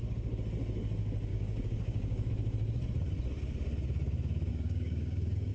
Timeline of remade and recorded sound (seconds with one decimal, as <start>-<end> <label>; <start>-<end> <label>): 0.0-1.3 recorded; 1.3-2.3 remade; 2.3-4.5 recorded; 4.5-5.5 remade